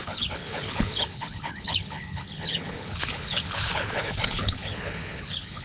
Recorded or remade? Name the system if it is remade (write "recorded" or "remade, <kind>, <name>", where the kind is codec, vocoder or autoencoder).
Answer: remade, codec, HILCodec